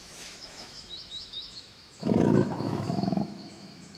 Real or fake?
fake